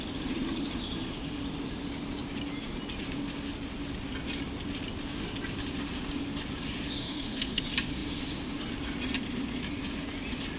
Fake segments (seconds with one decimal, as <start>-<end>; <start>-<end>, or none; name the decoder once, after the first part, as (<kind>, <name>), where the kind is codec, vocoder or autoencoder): 7.0-7.6 (autoencoder, DAC-VAE)